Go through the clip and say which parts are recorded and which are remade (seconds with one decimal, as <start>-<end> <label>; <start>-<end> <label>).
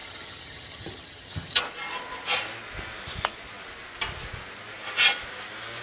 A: 0.0-1.6 remade; 1.6-5.8 recorded